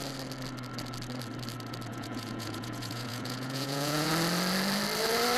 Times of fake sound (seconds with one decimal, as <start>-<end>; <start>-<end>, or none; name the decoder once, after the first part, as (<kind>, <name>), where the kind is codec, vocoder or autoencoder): 1.9-4.1 (vocoder, Vocos)